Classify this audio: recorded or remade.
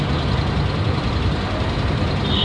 remade